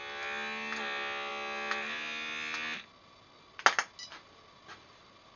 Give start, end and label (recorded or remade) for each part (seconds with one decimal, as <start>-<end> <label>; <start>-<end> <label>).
0.0-5.4 recorded